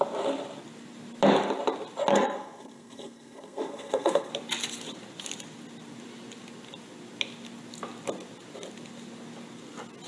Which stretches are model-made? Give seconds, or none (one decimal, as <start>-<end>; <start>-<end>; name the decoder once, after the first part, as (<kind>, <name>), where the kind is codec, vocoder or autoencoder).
2.1-4.3 (codec, SNAC)

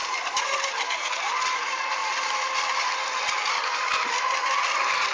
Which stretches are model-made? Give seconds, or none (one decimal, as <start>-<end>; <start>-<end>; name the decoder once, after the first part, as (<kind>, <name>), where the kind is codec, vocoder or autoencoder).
none

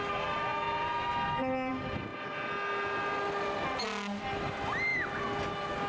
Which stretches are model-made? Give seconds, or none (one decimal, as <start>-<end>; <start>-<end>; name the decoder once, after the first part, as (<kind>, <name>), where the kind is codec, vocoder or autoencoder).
none